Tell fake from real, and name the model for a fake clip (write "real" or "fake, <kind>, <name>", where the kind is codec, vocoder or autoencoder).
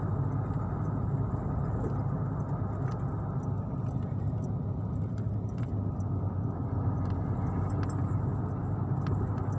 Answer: real